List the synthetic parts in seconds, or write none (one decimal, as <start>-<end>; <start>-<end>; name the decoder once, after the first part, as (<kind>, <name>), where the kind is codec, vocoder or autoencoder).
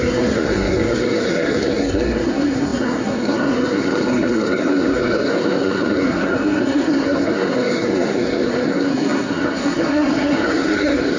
0.0-11.2 (codec, SNAC)